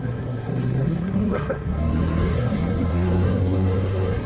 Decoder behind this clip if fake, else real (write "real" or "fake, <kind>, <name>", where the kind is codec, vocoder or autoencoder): fake, codec, SNAC